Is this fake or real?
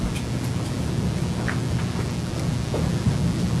real